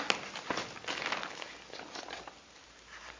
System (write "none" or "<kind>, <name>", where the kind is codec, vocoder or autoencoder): none